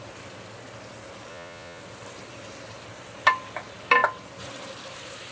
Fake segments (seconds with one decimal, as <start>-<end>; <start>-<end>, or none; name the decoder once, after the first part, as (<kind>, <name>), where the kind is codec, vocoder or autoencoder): 1.3-1.8 (vocoder, Vocos)